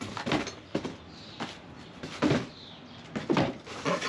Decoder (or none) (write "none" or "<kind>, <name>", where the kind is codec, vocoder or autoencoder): none